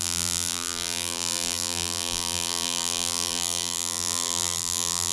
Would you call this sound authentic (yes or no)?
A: no